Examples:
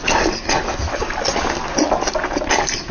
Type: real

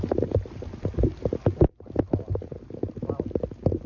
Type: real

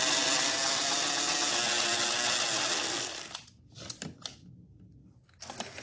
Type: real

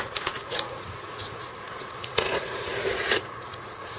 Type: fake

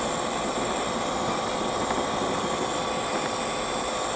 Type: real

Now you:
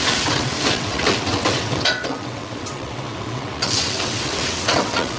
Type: fake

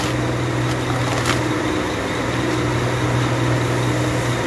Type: real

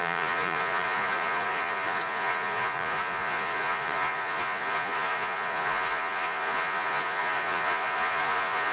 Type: fake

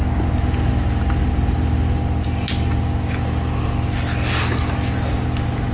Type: real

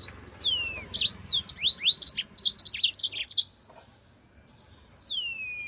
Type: real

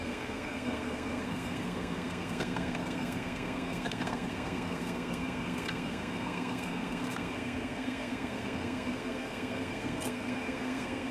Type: fake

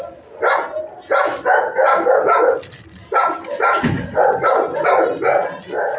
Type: real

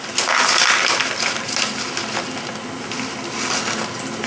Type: real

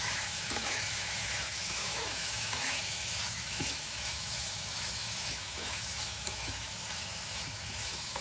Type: fake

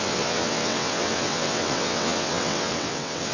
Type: fake